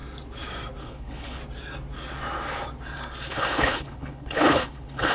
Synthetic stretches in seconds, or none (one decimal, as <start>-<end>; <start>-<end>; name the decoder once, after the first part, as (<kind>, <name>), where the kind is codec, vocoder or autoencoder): 0.8-1.4 (codec, HILCodec); 3.3-5.1